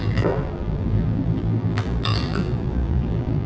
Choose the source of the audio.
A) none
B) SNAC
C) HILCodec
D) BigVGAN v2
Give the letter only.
D